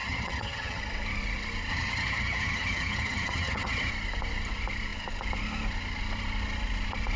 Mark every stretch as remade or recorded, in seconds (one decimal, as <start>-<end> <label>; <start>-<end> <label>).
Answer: 0.0-0.8 remade; 0.8-1.7 recorded; 1.7-3.9 remade; 3.9-7.2 recorded